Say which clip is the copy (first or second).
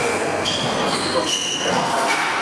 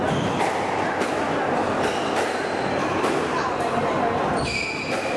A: first